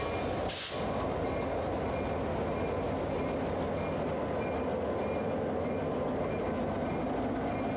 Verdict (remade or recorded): recorded